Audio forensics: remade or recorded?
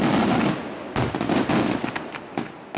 recorded